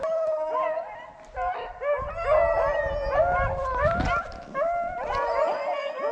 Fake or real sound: real